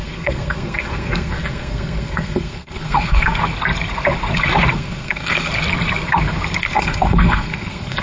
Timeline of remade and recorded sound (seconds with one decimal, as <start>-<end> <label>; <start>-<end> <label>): 0.0-3.4 remade; 3.4-4.7 recorded; 4.7-5.5 remade; 5.5-6.6 recorded; 6.6-8.0 remade